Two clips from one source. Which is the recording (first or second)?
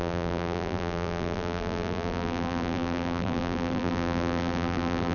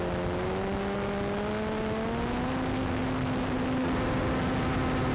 second